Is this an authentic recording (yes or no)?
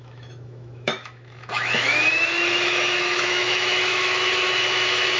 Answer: no